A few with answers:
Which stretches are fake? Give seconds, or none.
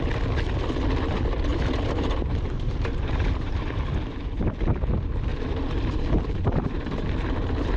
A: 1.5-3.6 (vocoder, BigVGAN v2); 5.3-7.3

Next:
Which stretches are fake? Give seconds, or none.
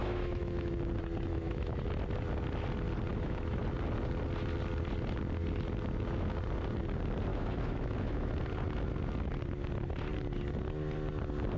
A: 0.0-0.7 (autoencoder, DAC-VAE); 1.3-1.8; 3.1-3.6; 7.3-8.3